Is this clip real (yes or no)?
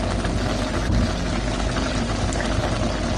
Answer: yes